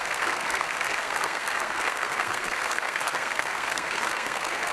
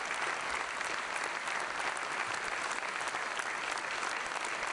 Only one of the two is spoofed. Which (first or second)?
first